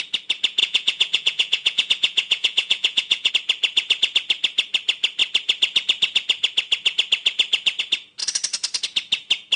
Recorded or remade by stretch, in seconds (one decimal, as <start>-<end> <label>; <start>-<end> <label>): 0.0-0.6 recorded; 0.6-3.3 remade; 3.3-9.6 recorded

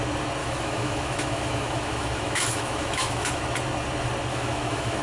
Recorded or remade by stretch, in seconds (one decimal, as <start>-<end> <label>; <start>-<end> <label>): 0.0-0.4 recorded; 0.4-3.4 remade; 3.4-4.3 recorded; 4.3-5.0 remade

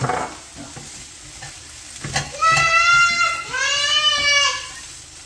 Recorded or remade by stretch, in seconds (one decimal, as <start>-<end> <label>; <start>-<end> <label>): 0.0-5.3 recorded

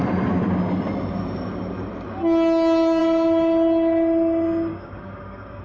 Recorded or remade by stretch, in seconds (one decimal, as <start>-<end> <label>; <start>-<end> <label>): 0.0-4.7 recorded; 4.7-5.6 remade

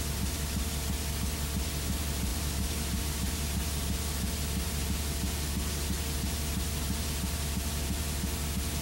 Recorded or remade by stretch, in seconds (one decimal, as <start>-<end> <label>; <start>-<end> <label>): 0.0-8.8 recorded

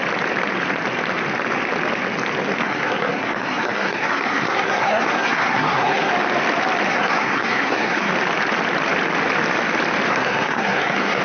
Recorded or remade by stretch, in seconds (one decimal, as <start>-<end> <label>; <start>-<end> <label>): 0.0-2.6 recorded; 2.6-6.1 remade; 6.1-6.9 recorded; 6.9-8.1 remade; 8.1-10.1 recorded; 10.1-11.2 remade